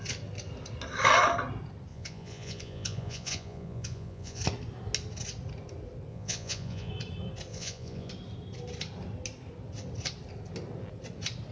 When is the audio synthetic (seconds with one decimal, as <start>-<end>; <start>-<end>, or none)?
1.9-4.4; 6.1-6.9; 7.5-8.1